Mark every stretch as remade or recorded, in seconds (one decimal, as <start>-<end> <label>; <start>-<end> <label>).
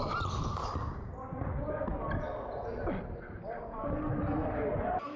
0.0-5.2 recorded